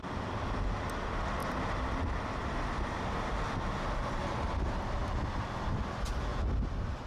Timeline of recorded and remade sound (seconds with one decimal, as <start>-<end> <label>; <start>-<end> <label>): 0.0-7.1 recorded